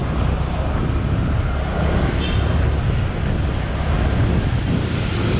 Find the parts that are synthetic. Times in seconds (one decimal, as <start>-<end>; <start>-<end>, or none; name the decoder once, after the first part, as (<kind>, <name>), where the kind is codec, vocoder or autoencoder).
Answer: none